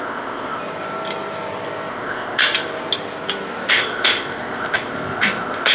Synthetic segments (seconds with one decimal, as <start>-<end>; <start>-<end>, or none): 0.0-0.6; 1.9-2.4; 3.7-5.7